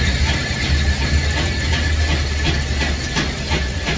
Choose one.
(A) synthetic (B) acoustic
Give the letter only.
B